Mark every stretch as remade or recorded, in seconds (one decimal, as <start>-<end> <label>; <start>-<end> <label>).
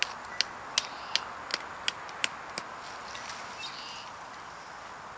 0.0-5.2 recorded